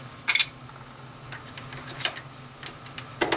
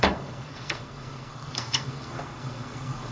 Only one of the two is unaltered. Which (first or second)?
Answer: first